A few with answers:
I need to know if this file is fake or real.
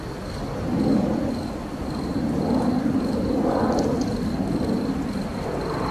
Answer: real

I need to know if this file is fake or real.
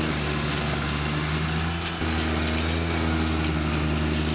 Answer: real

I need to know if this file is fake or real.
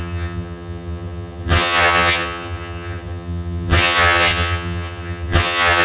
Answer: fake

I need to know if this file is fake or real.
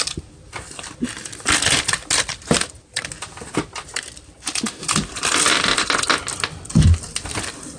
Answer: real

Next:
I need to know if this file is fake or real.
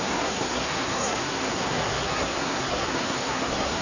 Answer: fake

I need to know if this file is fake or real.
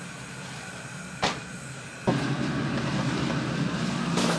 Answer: real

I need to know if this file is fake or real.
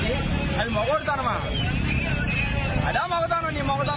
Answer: real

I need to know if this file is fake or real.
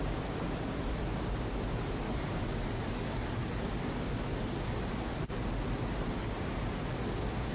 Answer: real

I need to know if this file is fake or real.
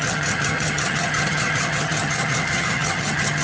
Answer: fake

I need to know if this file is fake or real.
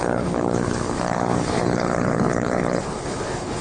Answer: fake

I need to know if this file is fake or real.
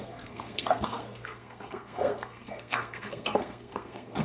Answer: fake